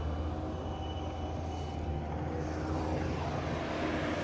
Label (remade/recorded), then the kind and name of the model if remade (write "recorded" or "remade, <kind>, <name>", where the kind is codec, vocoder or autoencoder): recorded